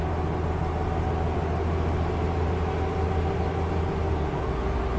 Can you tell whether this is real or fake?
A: real